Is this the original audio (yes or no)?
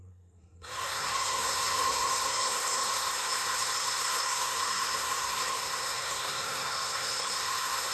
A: no